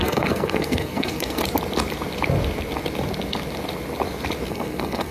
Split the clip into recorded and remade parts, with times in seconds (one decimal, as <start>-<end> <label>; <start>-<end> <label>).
0.0-1.4 remade; 1.4-4.5 recorded; 4.5-5.1 remade